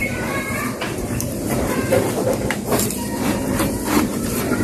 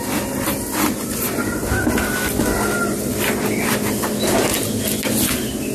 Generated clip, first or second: first